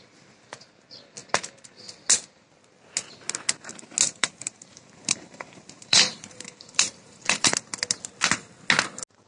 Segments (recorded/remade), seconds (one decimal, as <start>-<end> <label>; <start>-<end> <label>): 0.0-4.2 recorded; 4.2-7.5 remade; 7.5-9.3 recorded